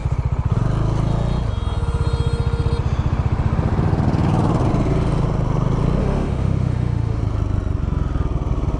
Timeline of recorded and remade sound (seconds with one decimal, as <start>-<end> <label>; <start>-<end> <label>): 0.0-6.0 recorded; 6.0-7.2 remade; 7.2-8.8 recorded